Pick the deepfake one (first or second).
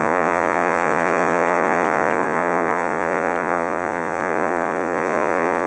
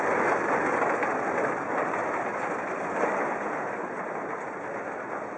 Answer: first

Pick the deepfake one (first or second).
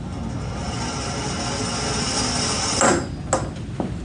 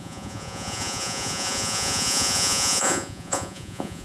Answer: second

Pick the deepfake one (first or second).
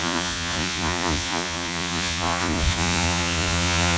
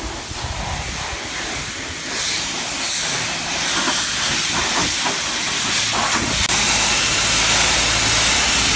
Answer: first